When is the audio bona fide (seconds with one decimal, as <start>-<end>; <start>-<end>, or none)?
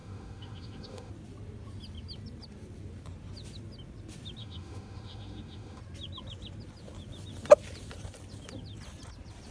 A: 1.1-4.4; 5.8-9.5